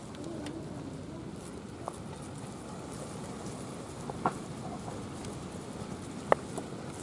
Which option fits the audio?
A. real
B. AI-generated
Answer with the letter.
A